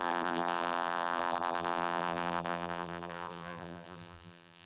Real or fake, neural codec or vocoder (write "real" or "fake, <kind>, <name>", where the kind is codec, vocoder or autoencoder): fake, vocoder, BigVGAN v2